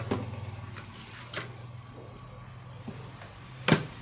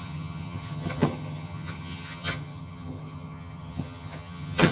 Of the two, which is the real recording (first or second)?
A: first